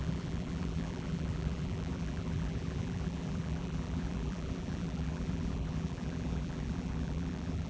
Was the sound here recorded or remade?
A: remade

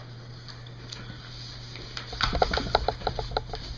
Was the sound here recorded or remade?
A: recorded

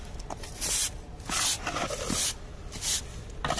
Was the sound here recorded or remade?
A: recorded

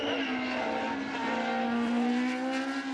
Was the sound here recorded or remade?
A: recorded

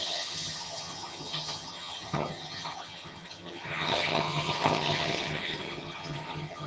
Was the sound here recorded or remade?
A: remade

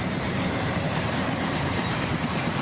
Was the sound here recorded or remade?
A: remade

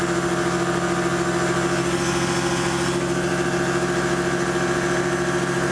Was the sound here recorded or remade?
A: recorded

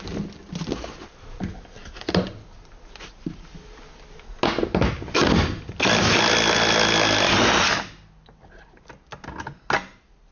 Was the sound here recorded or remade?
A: recorded